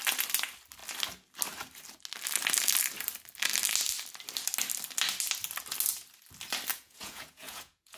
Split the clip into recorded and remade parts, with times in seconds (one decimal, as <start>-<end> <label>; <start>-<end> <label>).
0.0-6.7 recorded; 6.7-8.0 remade